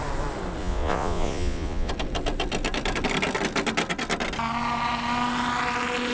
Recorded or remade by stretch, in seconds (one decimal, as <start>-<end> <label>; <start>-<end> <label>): 0.0-0.6 recorded; 0.6-1.9 remade; 1.9-6.1 recorded